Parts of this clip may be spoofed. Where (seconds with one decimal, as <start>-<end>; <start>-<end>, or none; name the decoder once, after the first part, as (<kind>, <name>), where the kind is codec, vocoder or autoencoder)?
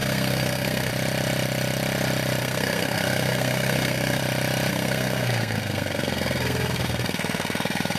0.0-0.9 (codec, SNAC); 2.4-4.2; 4.7-8.0